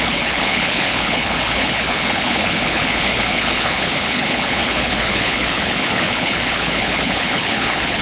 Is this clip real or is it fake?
fake